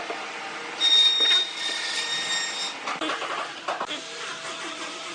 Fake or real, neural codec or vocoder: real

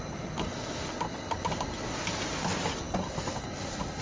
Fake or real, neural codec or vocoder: real